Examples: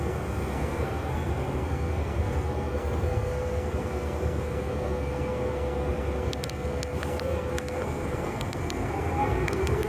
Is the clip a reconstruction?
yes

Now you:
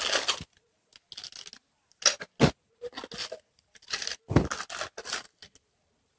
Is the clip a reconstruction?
no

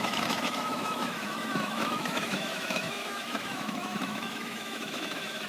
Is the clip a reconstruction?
yes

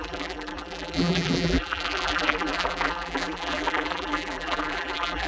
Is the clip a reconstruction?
yes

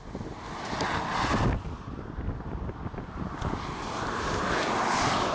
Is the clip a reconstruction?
no